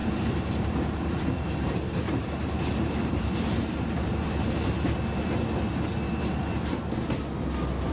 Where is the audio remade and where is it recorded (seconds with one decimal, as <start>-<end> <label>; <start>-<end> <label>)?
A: 0.0-4.1 remade; 4.1-7.9 recorded